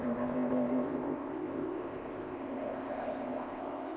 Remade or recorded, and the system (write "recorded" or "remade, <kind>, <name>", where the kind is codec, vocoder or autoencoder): remade, codec, ZipCodec